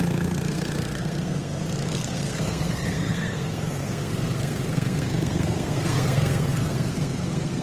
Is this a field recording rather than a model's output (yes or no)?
no